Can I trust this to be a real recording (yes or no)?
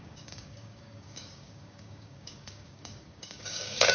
no